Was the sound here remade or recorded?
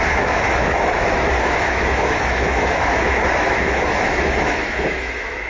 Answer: remade